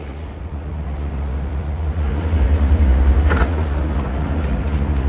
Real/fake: fake